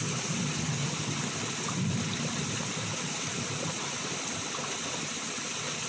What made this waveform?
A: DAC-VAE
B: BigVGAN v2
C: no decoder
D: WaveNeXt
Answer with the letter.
C